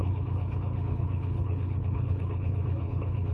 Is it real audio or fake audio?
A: fake